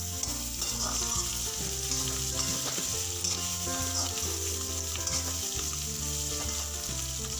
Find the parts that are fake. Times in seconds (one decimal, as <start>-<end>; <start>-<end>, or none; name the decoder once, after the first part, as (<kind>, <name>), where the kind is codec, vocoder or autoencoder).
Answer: none